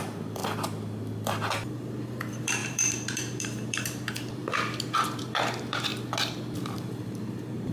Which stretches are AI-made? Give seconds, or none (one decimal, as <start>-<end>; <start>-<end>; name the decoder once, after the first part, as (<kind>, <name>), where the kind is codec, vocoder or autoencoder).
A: 0.0-0.4 (vocoder, BigVGAN v2); 1.9-5.9; 6.5-7.7